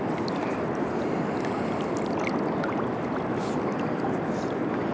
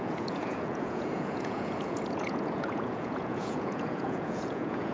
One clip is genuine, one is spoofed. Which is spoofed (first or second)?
second